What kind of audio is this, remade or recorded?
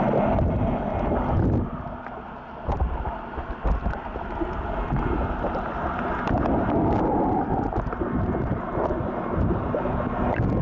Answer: recorded